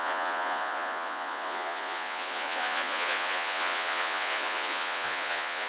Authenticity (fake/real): fake